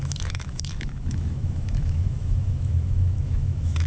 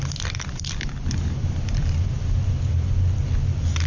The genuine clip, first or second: second